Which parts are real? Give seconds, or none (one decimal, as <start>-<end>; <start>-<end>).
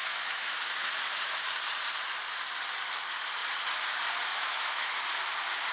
1.4-4.3; 5.0-5.7